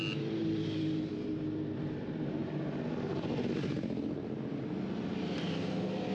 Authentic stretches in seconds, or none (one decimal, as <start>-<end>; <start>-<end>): 0.0-6.1